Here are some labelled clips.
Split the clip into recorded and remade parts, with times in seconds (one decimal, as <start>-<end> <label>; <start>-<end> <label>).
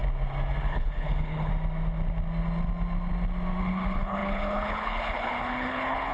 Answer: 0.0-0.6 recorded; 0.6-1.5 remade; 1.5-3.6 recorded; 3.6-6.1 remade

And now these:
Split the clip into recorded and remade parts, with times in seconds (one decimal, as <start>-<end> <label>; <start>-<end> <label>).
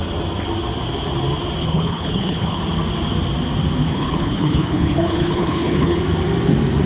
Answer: 0.0-1.6 recorded; 1.6-2.6 remade; 2.6-3.8 recorded; 3.8-6.0 remade; 6.0-6.9 recorded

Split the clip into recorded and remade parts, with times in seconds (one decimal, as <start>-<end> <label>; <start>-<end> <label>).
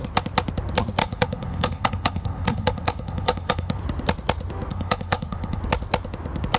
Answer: 0.0-1.0 recorded; 1.0-3.8 remade; 3.8-4.7 recorded; 4.7-5.6 remade; 5.6-6.6 recorded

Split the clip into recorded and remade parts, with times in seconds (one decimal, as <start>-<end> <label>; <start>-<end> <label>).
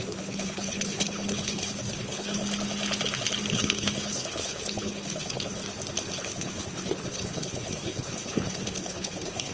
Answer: 0.0-2.4 remade; 2.4-3.5 recorded; 3.5-5.6 remade; 5.6-6.2 recorded; 6.2-9.5 remade